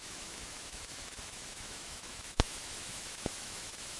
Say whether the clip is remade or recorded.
remade